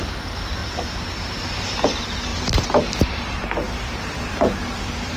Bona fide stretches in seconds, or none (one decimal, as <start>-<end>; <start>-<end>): 0.0-2.3; 3.3-5.2